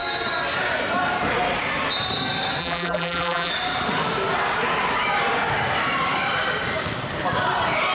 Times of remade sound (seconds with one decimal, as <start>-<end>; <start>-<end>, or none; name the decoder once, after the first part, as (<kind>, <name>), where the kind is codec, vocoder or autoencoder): 2.6-3.5 (vocoder, BigVGAN v2)